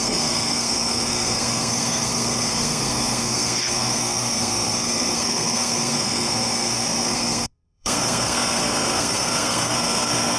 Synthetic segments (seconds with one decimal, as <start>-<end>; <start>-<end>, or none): 0.0-10.4